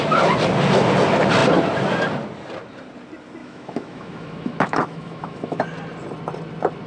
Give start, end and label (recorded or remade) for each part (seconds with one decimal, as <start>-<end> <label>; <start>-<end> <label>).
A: 0.0-3.4 recorded; 3.4-5.6 remade; 5.6-6.9 recorded